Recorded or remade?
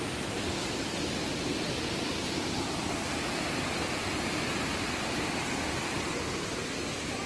recorded